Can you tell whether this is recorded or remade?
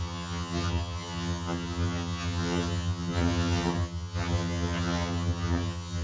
remade